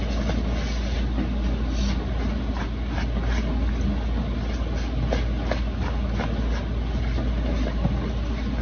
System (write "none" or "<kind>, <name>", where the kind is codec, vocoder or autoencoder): none